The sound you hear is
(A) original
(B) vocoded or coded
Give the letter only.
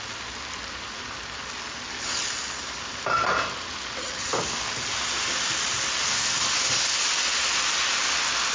A